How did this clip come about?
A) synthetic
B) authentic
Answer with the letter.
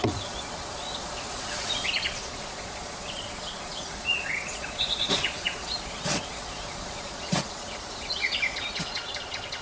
A